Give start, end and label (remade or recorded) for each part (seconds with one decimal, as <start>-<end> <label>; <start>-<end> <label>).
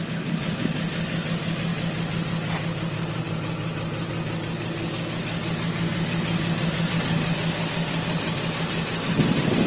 0.0-9.7 recorded